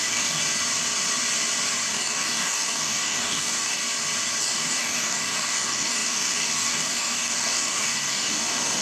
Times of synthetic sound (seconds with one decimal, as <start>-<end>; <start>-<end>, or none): 0.0-0.4; 1.9-3.8; 4.4-8.8